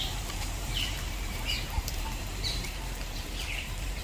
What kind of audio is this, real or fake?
fake